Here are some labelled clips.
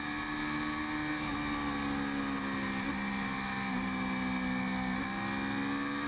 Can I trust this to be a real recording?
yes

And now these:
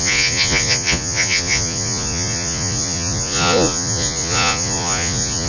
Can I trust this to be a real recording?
no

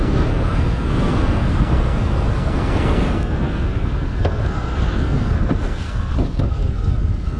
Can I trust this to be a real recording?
no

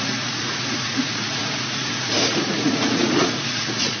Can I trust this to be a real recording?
no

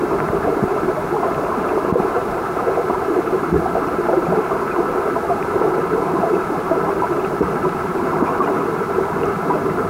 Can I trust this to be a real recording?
no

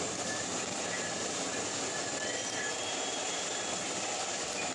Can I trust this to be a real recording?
yes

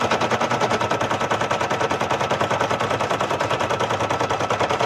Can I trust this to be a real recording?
yes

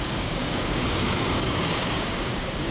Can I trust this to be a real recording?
no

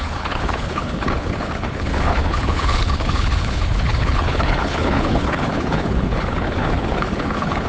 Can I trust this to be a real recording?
no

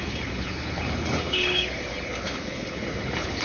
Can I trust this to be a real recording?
no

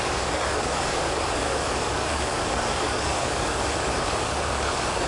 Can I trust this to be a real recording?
no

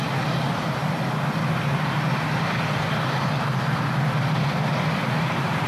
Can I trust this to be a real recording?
yes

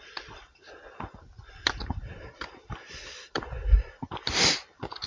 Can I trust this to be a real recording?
yes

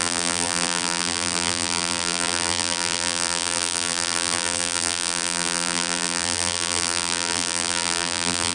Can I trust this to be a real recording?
no